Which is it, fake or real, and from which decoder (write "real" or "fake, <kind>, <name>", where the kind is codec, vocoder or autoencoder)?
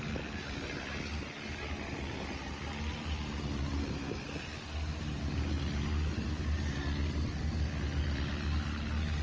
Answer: real